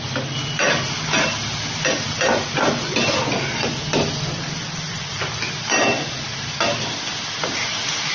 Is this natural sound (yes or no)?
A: yes